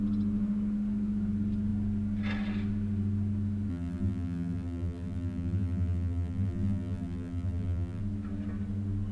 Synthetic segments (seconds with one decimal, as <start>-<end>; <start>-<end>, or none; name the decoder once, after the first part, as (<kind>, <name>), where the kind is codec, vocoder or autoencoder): 3.7-8.0 (vocoder, BigVGAN v2)

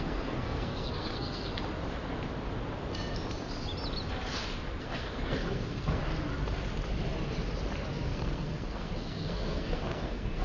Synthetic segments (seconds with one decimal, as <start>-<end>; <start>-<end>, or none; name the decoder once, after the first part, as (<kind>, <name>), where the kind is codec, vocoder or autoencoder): 0.0-1.5 (codec, SNAC); 4.8-6.1; 7.9-10.4